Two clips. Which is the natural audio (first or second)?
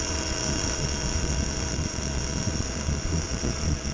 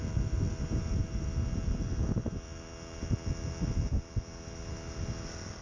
second